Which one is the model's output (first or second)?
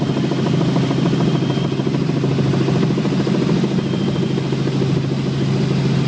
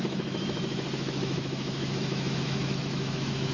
second